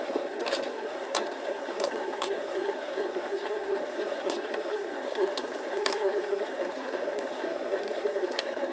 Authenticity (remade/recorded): remade